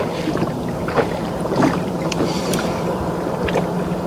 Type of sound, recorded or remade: remade